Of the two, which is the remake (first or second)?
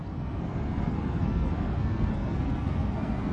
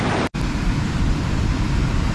first